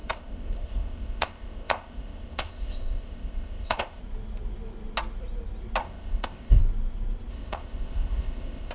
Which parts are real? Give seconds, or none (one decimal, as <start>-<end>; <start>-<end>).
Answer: 4.0-5.8; 6.6-7.3